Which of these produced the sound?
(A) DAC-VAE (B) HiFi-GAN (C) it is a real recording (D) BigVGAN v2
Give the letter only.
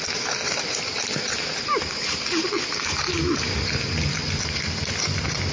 C